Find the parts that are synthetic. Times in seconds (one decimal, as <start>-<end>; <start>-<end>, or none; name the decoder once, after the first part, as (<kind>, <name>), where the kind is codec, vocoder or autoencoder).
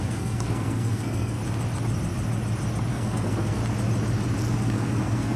0.0-1.4 (codec, SNAC); 2.9-3.6; 4.5-5.4